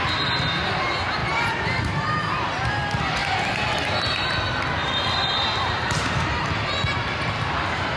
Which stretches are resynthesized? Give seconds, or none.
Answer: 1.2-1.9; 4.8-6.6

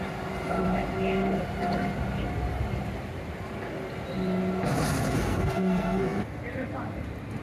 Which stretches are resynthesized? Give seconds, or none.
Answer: 4.9-6.4

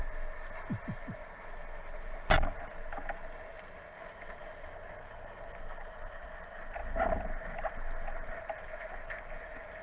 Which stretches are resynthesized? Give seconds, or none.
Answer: none

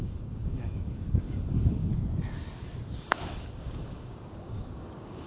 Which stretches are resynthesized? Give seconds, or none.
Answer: 0.0-1.9; 2.9-5.3